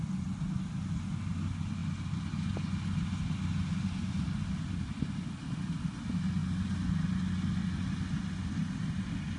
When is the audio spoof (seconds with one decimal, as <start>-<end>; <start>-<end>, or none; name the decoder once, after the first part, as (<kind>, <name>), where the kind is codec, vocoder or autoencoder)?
none

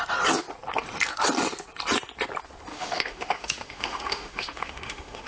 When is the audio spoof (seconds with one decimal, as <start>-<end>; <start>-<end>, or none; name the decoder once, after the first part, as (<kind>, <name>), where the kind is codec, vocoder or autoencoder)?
2.7-5.3 (autoencoder, DAC-VAE)

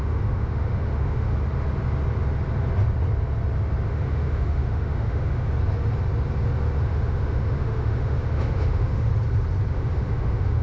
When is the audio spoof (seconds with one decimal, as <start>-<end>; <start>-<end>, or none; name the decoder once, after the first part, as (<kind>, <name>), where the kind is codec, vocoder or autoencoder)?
0.0-1.3 (autoencoder, DAC-VAE); 3.9-5.5; 6.8-9.1; 9.7-10.6